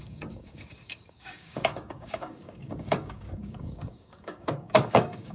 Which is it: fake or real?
fake